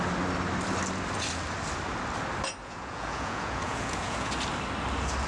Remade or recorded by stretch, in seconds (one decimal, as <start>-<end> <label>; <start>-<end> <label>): 0.0-2.6 recorded; 2.6-4.3 remade; 4.3-5.3 recorded